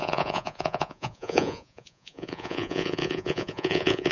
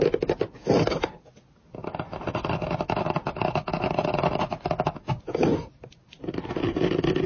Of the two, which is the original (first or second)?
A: second